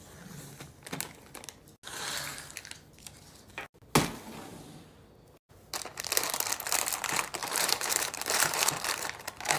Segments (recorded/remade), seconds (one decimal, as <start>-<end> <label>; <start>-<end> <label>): 0.0-7.4 recorded; 7.4-8.7 remade; 8.7-9.6 recorded